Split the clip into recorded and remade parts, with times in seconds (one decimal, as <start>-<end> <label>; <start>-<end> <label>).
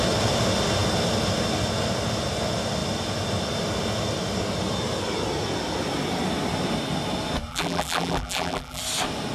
0.0-7.5 recorded; 7.5-8.8 remade; 8.8-9.3 recorded